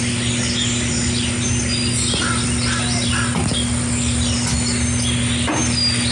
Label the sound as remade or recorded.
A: recorded